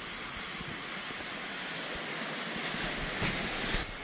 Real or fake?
real